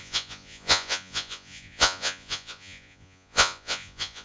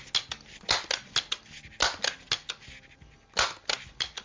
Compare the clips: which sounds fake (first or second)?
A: first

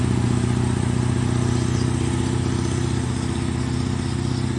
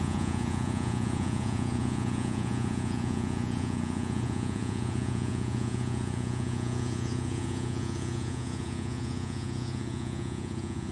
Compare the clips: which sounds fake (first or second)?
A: second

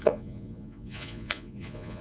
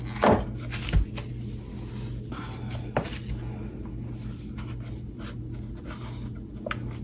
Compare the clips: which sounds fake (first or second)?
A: first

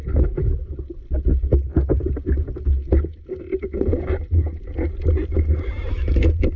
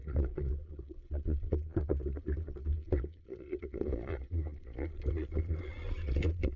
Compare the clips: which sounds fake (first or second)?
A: second